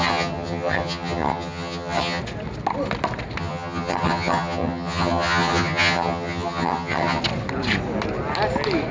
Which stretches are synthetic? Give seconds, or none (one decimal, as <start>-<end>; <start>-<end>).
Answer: 0.0-2.2; 3.4-7.2